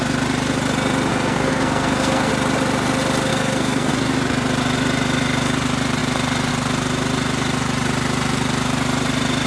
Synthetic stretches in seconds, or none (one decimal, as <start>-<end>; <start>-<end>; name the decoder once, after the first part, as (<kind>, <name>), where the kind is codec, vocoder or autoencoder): 1.1-2.3 (codec, SNAC); 3.3-3.9